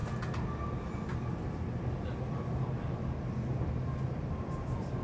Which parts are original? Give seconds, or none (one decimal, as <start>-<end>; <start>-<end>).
0.0-5.0